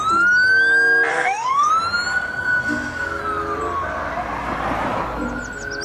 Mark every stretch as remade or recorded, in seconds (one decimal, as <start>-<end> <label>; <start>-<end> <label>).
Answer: 0.0-1.1 recorded; 1.1-1.7 remade; 1.7-2.6 recorded; 2.6-3.2 remade; 3.2-5.8 recorded

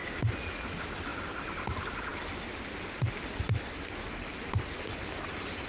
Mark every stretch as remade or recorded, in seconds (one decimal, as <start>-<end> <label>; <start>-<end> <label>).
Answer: 0.0-5.7 recorded

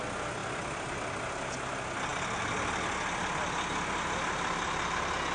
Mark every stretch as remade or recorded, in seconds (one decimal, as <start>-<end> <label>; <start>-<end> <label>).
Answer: 0.0-5.3 recorded

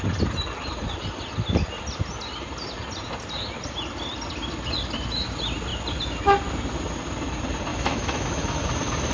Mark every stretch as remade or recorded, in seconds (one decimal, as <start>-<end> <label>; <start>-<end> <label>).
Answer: 0.0-7.7 recorded; 7.7-8.6 remade; 8.6-9.1 recorded

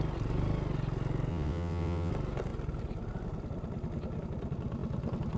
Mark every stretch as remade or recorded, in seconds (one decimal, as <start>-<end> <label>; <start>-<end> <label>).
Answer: 0.0-1.3 recorded; 1.3-2.1 remade; 2.1-5.4 recorded

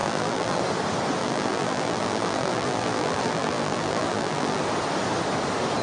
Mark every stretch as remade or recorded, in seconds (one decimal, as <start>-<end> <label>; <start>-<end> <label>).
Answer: 0.0-0.6 remade; 0.6-1.2 recorded; 1.2-4.6 remade; 4.6-5.8 recorded

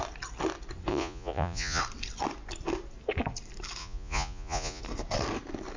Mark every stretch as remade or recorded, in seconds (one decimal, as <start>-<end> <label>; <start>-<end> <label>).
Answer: 0.0-0.9 recorded; 0.9-1.8 remade; 1.8-3.8 recorded; 3.8-4.8 remade; 4.8-5.8 recorded